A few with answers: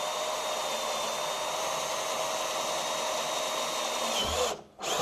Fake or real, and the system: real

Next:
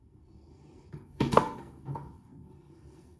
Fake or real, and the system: fake, codec, SNAC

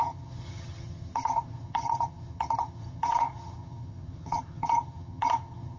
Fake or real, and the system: fake, vocoder, HiFi-GAN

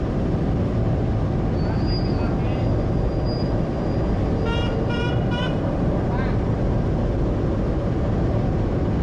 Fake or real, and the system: real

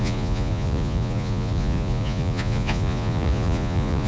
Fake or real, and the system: fake, vocoder, Vocos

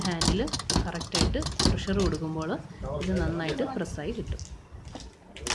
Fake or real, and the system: real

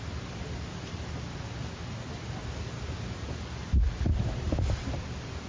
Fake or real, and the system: real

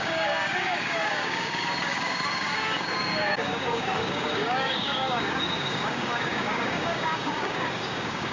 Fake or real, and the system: fake, codec, DAC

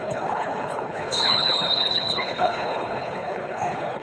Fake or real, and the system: fake, codec, HILCodec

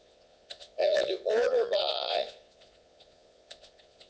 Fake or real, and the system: fake, vocoder, Vocos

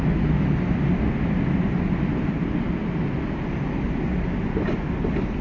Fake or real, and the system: real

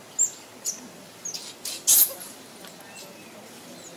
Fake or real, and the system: real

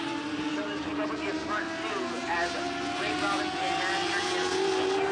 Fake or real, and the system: real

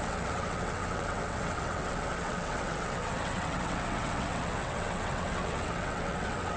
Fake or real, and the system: fake, vocoder, WaveNeXt